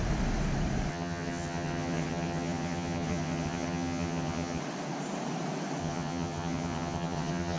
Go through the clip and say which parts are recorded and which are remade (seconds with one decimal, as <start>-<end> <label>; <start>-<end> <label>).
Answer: 0.0-0.9 recorded; 0.9-4.6 remade; 4.6-5.8 recorded; 5.8-7.6 remade